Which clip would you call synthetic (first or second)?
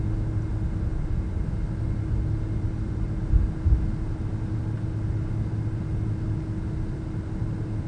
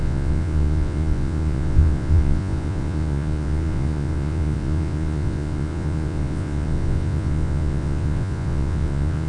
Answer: second